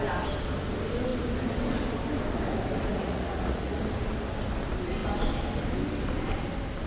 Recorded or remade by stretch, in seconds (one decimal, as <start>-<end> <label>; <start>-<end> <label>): 0.0-2.9 recorded; 2.9-3.8 remade; 3.8-6.9 recorded